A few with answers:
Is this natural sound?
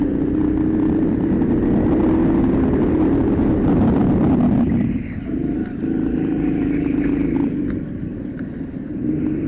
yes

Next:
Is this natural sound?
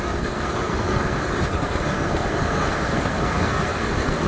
no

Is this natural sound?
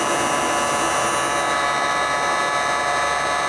yes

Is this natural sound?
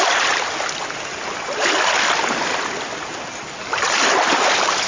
yes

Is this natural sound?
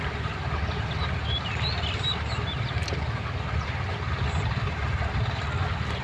yes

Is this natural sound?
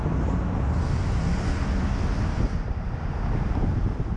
yes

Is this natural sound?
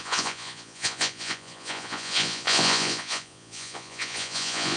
no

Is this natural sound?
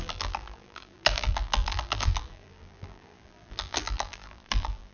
no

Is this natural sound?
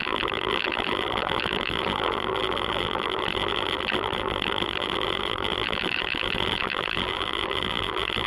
no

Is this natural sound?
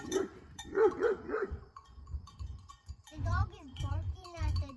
no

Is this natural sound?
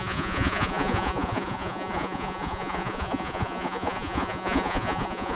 no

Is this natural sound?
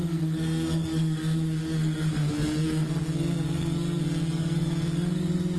no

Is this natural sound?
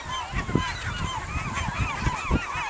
yes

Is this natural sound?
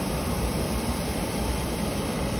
no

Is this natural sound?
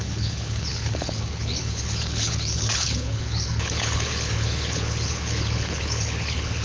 no